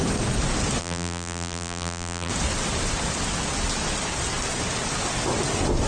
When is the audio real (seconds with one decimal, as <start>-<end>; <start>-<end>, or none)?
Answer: 0.0-0.8; 2.3-5.9

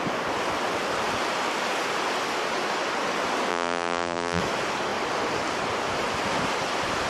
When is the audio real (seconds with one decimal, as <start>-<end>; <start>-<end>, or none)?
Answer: 0.0-3.5; 4.4-7.1